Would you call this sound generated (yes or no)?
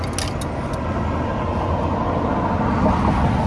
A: no